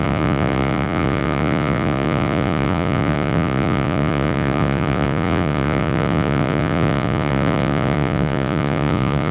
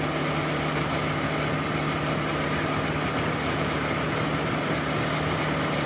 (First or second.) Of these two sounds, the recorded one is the second